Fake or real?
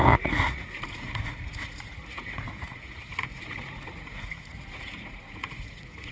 fake